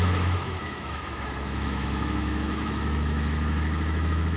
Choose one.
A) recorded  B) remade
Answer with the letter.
B